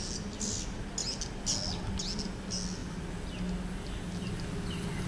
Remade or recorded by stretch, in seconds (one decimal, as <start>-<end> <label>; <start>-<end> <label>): 0.0-5.1 recorded